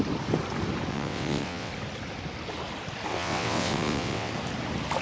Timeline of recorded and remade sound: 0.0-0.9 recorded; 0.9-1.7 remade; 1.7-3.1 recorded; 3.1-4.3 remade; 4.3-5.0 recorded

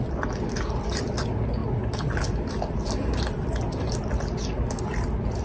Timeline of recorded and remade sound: 0.0-5.4 recorded

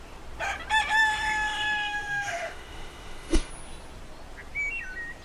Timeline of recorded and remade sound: 0.0-1.0 recorded; 1.0-3.5 remade; 3.5-5.2 recorded

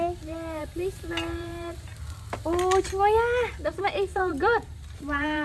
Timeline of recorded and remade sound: 0.0-1.9 remade; 1.9-3.7 recorded; 3.7-5.4 remade

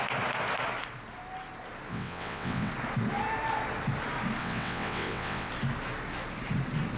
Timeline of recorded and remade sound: 0.0-1.9 recorded; 1.9-2.7 remade; 2.7-4.4 recorded; 4.4-5.5 remade; 5.5-7.0 recorded